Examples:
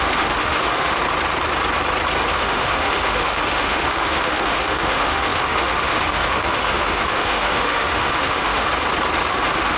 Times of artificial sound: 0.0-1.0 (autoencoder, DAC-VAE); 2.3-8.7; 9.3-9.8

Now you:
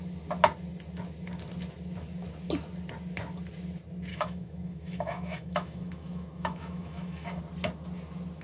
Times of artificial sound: 4.1-7.4 (autoencoder, DAC-VAE)

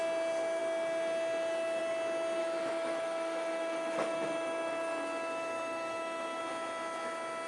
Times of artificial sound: 2.4-6.4 (autoencoder, DAC-VAE)

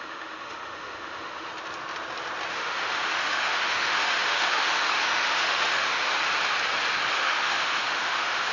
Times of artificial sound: 0.0-1.5 (autoencoder, DAC-VAE); 2.5-6.2; 7.1-8.5

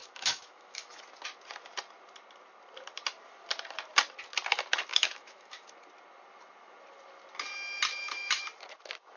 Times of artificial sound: 0.0-1.0 (autoencoder, DAC-VAE); 4.9-5.7

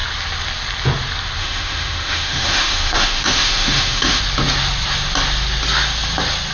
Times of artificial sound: 1.4-4.2 (autoencoder, DAC-VAE)